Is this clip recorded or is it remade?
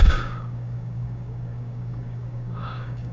remade